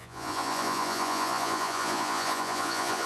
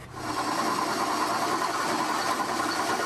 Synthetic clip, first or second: first